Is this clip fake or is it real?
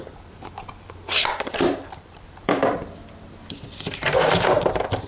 fake